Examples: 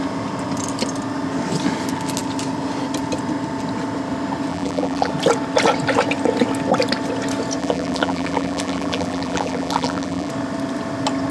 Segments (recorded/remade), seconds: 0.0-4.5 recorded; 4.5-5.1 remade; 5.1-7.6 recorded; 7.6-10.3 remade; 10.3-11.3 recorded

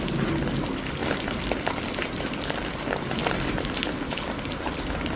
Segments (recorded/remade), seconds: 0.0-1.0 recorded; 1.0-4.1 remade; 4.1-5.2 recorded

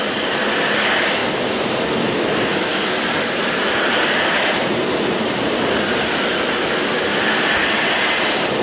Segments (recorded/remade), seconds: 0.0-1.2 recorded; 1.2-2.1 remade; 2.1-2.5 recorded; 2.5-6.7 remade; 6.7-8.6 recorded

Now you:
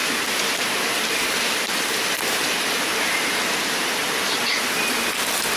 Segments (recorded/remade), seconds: 0.0-3.4 remade; 3.4-5.6 recorded

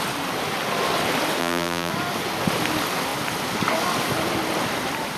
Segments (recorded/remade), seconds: 0.0-1.4 recorded; 1.4-1.9 remade; 1.9-5.2 recorded